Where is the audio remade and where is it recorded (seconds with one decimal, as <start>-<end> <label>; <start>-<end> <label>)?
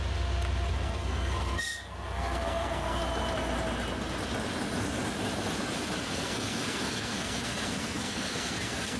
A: 0.0-0.7 recorded; 0.7-3.0 remade; 3.0-6.0 recorded; 6.0-9.0 remade